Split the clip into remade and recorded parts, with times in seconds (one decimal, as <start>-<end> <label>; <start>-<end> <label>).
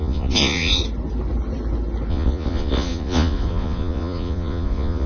0.0-0.8 remade; 0.8-2.1 recorded; 2.1-5.1 remade